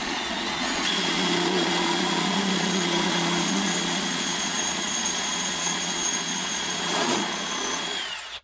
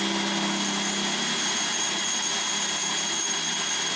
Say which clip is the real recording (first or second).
second